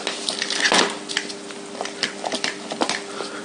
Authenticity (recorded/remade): recorded